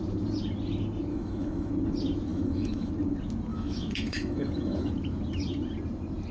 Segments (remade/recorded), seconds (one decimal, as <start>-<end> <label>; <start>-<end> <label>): 0.0-1.1 recorded; 1.1-1.7 remade; 1.7-2.3 recorded; 2.3-2.9 remade; 2.9-3.5 recorded; 3.5-4.9 remade; 4.9-6.3 recorded